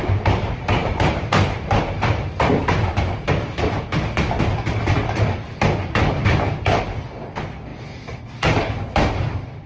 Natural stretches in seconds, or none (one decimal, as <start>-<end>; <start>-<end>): 0.0-0.8; 3.8-6.0; 6.6-9.7